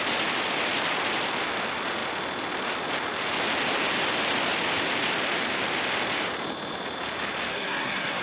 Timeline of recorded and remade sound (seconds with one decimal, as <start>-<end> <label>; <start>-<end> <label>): 0.0-7.5 recorded; 7.5-8.2 remade